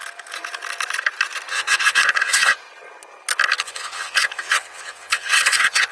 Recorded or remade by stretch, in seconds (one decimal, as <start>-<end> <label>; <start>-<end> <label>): 0.0-1.5 recorded; 1.5-2.6 remade; 2.6-3.6 recorded; 3.6-5.9 remade